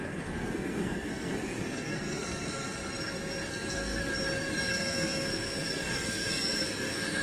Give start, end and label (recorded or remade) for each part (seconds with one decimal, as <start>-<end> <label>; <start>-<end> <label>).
0.0-2.8 remade; 2.8-3.5 recorded; 3.5-4.0 remade; 4.0-4.7 recorded; 4.7-7.2 remade

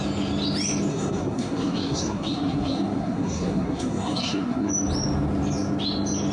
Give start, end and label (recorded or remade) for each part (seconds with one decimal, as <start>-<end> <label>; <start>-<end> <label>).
0.0-0.9 recorded; 0.9-4.7 remade; 4.7-6.3 recorded

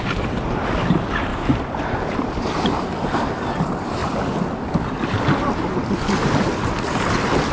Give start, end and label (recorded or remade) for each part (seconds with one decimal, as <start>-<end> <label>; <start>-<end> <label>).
0.0-1.3 recorded; 1.3-1.9 remade; 1.9-4.0 recorded; 4.0-4.6 remade; 4.6-5.8 recorded; 5.8-6.5 remade; 6.5-7.5 recorded

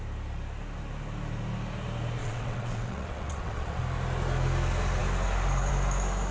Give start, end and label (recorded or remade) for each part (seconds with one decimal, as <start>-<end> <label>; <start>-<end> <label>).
0.0-2.2 recorded; 2.2-3.8 remade; 3.8-6.3 recorded

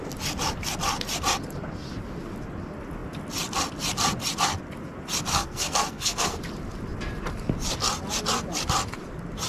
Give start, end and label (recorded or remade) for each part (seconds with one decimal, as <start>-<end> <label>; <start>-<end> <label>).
0.0-5.3 recorded; 5.3-6.4 remade; 6.4-9.5 recorded

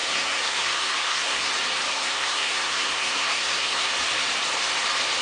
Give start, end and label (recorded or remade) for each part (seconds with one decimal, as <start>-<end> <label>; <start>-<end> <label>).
0.0-1.5 remade; 1.5-1.9 recorded; 1.9-3.9 remade; 3.9-5.2 recorded